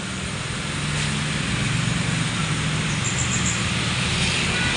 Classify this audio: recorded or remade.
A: recorded